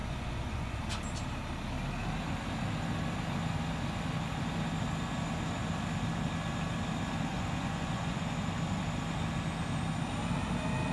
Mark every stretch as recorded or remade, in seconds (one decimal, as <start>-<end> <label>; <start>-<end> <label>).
0.0-0.8 remade; 0.8-7.3 recorded; 7.3-8.2 remade; 8.2-10.9 recorded